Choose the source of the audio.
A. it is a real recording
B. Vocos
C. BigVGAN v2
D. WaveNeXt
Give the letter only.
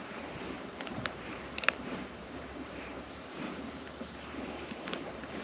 C